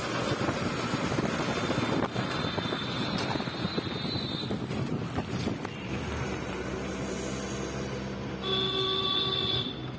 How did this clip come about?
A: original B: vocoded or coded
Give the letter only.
A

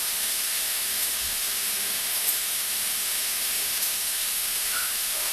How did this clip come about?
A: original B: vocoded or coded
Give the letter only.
B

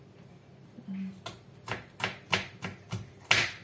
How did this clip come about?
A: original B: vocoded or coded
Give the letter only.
A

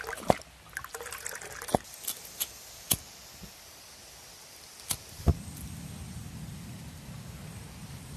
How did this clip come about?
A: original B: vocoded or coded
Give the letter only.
A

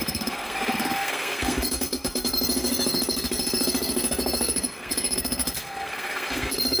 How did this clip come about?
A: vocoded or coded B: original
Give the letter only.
A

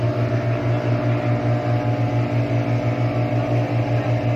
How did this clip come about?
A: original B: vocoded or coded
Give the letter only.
A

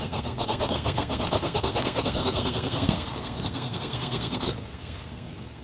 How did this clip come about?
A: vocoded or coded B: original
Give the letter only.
A